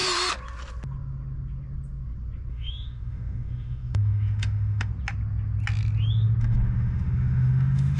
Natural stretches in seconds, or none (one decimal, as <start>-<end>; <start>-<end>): 0.0-2.5; 4.9-6.4